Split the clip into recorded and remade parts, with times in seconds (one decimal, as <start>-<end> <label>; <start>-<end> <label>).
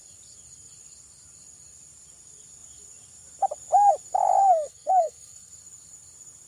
0.0-4.4 recorded; 4.4-5.5 remade; 5.5-6.5 recorded